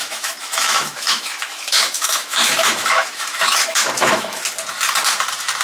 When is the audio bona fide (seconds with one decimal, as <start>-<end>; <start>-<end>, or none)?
4.4-5.6